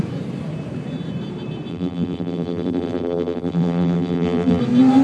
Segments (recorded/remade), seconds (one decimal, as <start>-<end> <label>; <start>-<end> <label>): 0.0-1.7 recorded; 1.7-4.6 remade; 4.6-5.0 recorded